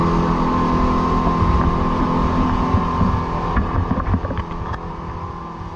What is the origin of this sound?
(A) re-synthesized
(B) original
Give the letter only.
B